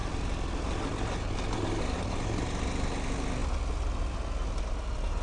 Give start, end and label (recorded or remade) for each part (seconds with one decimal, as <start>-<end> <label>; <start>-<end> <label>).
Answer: 0.0-5.2 recorded